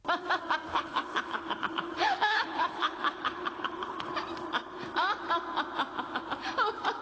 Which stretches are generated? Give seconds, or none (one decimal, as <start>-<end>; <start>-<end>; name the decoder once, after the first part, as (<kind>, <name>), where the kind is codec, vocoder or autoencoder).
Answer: 0.7-4.1 (codec, HILCodec)